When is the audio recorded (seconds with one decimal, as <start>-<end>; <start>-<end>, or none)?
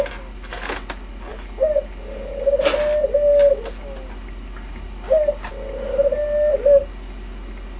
0.0-7.8